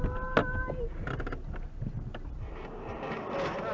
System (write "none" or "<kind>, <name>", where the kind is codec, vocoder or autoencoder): none